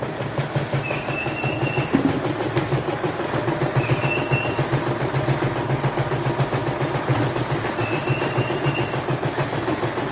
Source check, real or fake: real